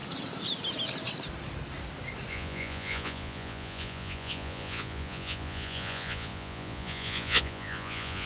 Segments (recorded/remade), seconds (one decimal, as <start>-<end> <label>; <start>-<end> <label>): 0.0-2.3 recorded; 2.3-8.3 remade